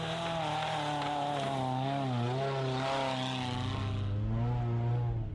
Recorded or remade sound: recorded